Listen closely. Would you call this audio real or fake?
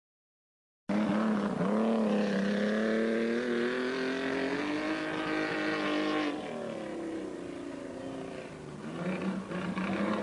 real